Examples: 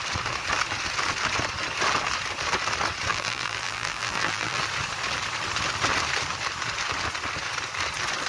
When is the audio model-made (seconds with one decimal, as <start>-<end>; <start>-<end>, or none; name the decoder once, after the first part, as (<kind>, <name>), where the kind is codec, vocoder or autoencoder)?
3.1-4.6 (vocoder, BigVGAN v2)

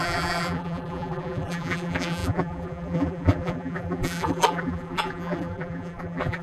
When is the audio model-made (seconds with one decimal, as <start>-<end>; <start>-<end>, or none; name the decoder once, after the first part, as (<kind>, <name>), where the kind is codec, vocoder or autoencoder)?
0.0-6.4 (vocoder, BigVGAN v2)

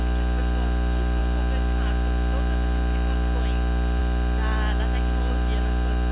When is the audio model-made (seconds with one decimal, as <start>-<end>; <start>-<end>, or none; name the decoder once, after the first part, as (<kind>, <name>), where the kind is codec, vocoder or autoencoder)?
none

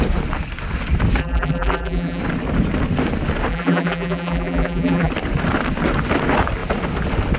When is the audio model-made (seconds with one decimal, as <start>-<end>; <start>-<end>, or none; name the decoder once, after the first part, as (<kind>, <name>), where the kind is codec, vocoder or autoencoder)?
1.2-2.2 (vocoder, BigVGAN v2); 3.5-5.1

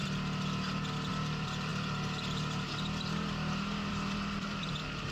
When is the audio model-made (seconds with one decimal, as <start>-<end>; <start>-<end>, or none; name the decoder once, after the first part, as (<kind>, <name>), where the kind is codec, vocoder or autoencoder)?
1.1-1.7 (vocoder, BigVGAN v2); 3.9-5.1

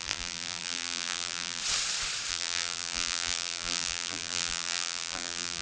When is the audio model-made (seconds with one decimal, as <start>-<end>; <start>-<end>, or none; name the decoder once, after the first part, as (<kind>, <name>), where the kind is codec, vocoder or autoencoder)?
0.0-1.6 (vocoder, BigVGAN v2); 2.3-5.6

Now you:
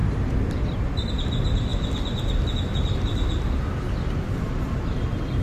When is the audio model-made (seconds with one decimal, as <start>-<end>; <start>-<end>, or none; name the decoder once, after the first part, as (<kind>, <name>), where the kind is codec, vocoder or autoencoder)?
0.0-1.1 (vocoder, BigVGAN v2)